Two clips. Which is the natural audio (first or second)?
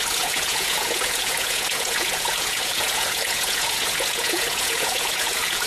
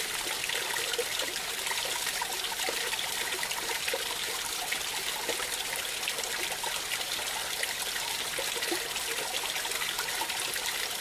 second